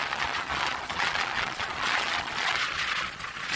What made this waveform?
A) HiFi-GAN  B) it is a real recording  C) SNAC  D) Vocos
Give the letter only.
D